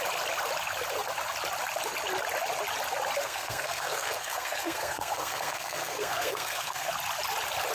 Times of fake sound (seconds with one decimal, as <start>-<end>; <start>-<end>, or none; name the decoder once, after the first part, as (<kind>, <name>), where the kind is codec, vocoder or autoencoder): 3.2-6.9 (codec, SNAC)